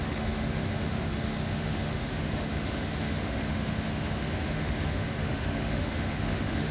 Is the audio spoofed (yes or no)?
yes